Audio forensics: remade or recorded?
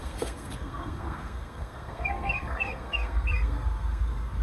remade